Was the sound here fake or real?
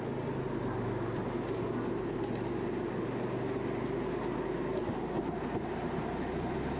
real